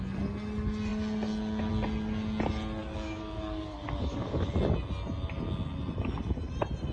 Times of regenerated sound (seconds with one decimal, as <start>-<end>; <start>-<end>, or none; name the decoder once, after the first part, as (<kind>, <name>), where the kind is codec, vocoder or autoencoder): 2.8-4.5 (codec, DAC)